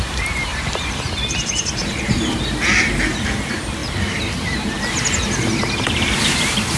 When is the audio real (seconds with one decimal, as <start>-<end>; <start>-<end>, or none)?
0.0-0.5; 1.0-1.8; 2.4-3.8; 4.8-5.4